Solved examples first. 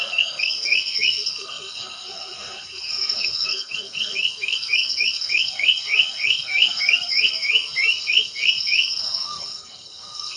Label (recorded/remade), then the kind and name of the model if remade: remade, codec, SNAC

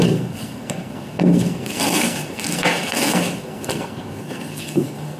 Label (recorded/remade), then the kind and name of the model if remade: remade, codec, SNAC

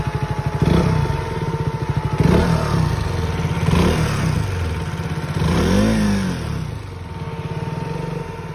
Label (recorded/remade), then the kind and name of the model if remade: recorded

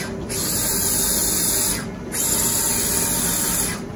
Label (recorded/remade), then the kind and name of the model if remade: recorded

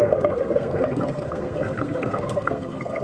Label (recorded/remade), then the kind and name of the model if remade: remade, codec, SNAC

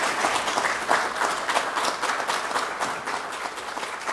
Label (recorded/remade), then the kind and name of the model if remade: recorded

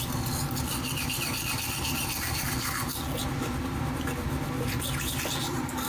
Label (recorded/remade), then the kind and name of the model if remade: recorded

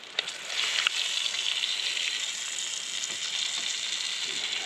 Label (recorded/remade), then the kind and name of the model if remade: recorded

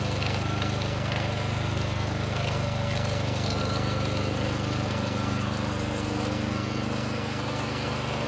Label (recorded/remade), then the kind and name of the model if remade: remade, codec, SNAC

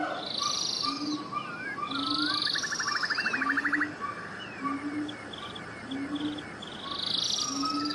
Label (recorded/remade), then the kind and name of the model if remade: recorded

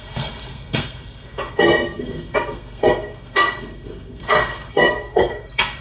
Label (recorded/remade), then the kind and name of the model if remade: remade, codec, SNAC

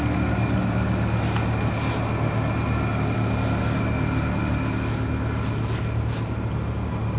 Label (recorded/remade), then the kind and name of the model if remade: recorded